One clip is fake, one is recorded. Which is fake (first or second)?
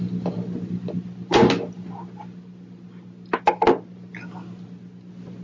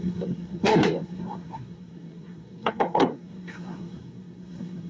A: second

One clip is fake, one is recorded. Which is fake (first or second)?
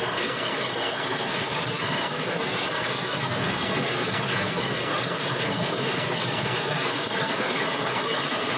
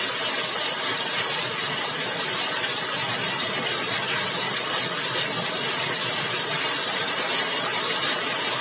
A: first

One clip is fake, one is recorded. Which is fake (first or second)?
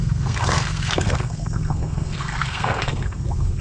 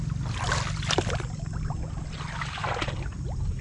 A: first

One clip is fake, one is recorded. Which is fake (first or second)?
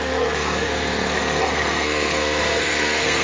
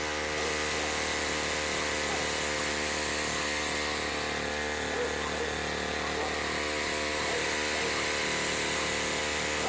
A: first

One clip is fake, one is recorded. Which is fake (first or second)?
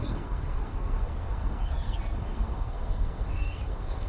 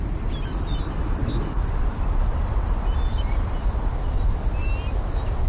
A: first